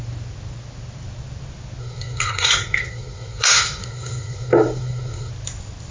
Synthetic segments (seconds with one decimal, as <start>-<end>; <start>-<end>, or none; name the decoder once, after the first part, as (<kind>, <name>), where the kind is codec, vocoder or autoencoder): 1.8-5.3 (codec, SNAC)